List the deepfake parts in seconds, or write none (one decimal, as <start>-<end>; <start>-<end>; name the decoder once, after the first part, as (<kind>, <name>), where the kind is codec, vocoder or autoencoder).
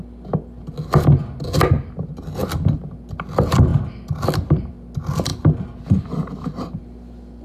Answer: none